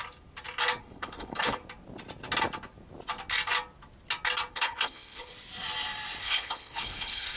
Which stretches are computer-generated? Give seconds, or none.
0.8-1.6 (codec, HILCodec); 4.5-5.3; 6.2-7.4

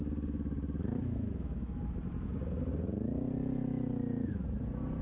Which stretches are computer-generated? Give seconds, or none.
0.9-1.9 (autoencoder, DAC-VAE)